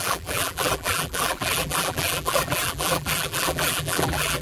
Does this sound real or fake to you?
fake